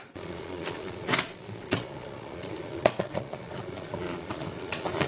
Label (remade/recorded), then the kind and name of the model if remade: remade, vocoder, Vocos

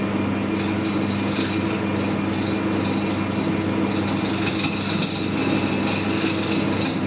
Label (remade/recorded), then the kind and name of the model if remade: recorded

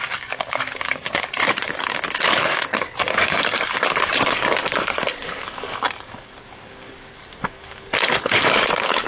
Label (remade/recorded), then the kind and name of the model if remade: remade, codec, DAC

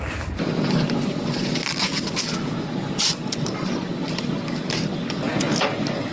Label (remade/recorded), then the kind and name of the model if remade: recorded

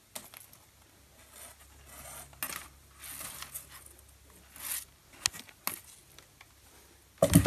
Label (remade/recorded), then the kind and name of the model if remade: recorded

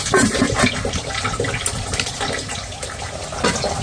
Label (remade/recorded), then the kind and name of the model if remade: recorded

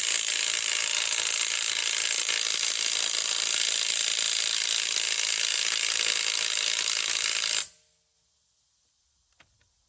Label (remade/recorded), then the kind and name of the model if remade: recorded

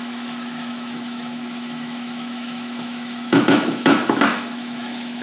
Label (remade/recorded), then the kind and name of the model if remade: remade, autoencoder, DAC-VAE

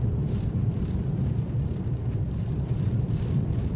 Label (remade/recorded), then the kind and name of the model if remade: remade, vocoder, BigVGAN v2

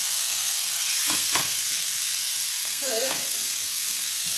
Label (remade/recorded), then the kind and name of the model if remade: remade, codec, SNAC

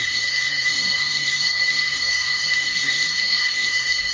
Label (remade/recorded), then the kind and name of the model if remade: remade, codec, SNAC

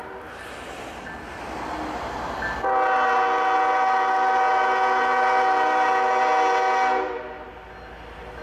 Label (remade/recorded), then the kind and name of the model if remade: recorded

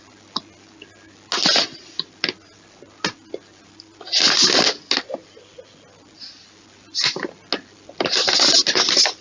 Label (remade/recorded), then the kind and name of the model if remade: recorded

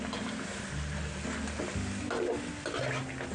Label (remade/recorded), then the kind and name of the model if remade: recorded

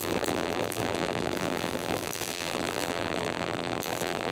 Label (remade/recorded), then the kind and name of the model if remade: remade, vocoder, BigVGAN v2